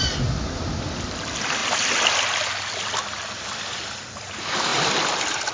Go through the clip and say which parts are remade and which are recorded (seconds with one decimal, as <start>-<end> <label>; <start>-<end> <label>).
0.0-5.5 recorded